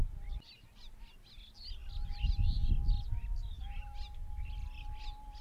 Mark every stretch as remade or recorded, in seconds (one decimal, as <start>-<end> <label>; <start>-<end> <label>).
0.0-5.4 recorded